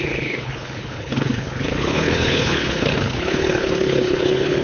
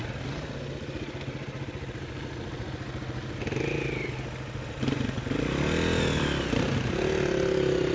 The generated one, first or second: first